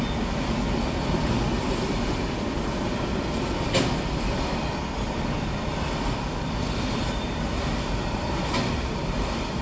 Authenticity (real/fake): real